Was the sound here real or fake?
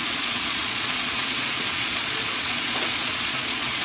fake